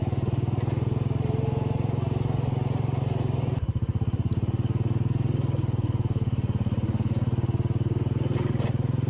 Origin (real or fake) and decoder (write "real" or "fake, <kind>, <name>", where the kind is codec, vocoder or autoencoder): real